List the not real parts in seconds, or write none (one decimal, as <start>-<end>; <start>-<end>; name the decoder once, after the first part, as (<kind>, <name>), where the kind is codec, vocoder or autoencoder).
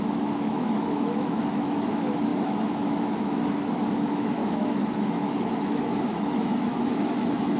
0.0-7.6 (autoencoder, DAC-VAE)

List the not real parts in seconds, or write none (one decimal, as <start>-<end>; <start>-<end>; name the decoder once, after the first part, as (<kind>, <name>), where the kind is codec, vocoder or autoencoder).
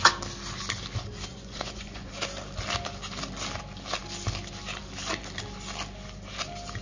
1.3-2.1 (vocoder, Vocos)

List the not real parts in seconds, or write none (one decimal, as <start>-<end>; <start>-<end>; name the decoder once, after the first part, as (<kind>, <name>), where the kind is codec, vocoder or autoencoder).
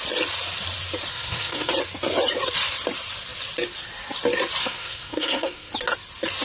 1.1-1.7 (codec, SNAC); 4.6-5.7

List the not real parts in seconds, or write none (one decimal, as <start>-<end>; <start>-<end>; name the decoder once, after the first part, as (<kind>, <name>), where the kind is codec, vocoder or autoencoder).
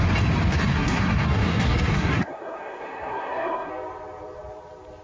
0.7-3.7 (codec, SNAC)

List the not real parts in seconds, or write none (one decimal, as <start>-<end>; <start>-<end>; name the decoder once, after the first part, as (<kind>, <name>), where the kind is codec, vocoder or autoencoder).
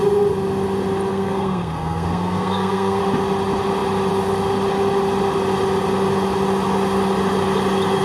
1.1-3.0 (codec, SNAC)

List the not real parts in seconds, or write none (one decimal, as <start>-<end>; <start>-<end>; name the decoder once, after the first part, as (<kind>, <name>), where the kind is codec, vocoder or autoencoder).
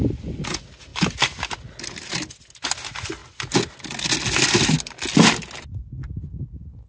none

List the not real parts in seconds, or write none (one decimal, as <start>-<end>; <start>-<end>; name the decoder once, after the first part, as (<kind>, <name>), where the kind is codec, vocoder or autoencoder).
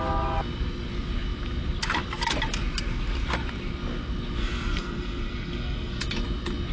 4.4-6.0 (codec, SNAC)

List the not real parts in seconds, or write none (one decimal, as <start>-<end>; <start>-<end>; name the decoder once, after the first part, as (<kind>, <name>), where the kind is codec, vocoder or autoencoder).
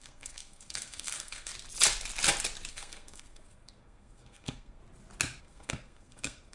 0.0-1.5 (codec, SNAC); 2.7-4.8; 5.4-6.5